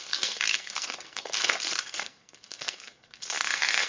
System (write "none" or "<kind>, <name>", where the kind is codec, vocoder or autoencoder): codec, SNAC